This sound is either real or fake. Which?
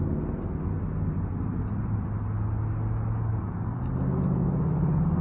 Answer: real